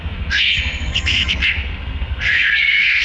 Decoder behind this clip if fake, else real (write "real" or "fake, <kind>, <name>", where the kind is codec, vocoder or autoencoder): fake, codec, SNAC